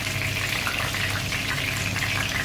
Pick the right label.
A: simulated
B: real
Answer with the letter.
B